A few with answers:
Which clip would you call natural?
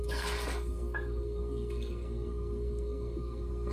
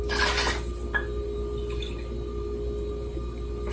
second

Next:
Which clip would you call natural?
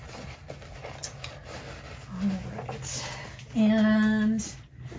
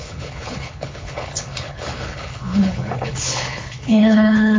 first